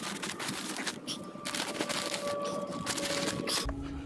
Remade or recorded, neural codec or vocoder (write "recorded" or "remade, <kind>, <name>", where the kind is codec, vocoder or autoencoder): recorded